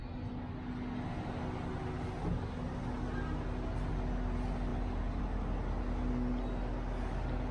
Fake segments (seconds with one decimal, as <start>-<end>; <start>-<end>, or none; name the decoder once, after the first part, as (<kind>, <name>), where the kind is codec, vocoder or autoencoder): none

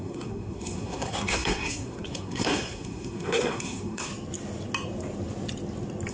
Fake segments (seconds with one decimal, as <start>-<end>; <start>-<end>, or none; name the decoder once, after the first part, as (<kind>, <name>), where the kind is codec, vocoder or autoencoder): 0.0-4.1 (codec, SNAC)